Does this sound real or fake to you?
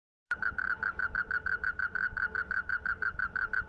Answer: fake